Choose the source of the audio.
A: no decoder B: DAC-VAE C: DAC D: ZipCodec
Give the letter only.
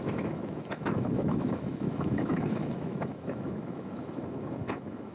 B